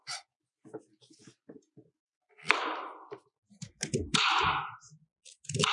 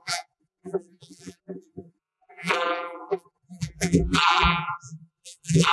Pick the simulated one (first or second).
second